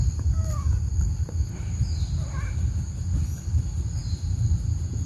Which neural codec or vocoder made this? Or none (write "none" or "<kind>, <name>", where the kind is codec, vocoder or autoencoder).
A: none